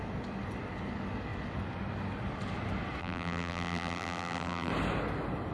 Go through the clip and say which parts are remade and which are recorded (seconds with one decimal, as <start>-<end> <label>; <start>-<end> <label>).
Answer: 0.0-3.0 recorded; 3.0-4.7 remade; 4.7-5.5 recorded